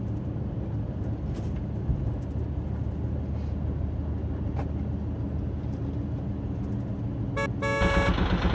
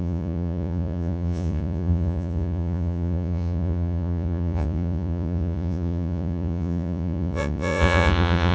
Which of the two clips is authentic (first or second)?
first